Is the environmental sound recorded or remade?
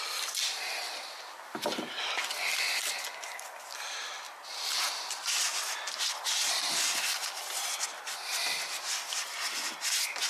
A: recorded